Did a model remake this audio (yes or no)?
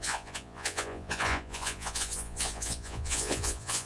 yes